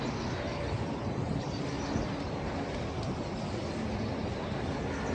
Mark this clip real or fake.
real